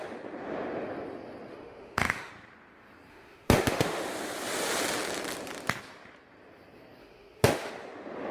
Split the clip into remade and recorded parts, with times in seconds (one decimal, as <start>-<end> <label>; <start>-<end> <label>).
0.0-1.5 recorded; 1.5-2.3 remade; 2.3-3.1 recorded; 3.1-4.0 remade; 4.0-7.0 recorded; 7.0-7.7 remade; 7.7-8.3 recorded